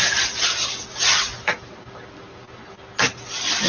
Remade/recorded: recorded